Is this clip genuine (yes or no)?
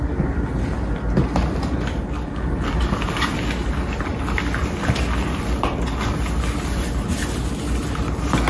yes